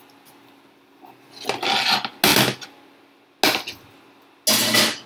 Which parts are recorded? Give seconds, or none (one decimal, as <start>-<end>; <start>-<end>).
0.0-5.1